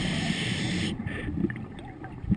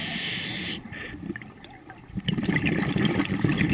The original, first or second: first